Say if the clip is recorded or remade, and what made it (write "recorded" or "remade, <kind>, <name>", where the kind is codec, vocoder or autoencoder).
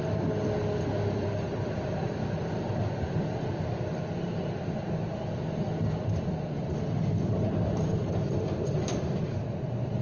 recorded